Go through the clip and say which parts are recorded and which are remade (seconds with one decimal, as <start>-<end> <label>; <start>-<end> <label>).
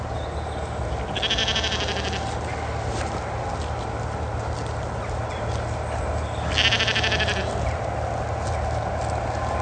0.0-9.6 recorded